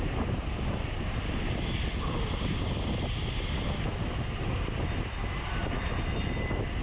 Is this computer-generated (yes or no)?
no